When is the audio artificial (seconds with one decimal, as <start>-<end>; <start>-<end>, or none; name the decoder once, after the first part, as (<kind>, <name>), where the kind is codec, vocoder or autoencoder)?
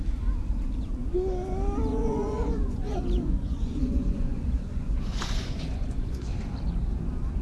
1.9-6.3 (vocoder, Vocos)